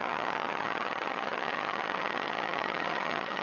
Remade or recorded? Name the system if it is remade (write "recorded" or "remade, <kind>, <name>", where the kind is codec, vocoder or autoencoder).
remade, vocoder, HiFi-GAN